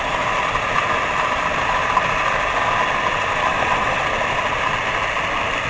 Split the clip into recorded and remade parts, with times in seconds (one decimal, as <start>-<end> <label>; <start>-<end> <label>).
0.0-3.5 recorded; 3.5-4.0 remade; 4.0-5.7 recorded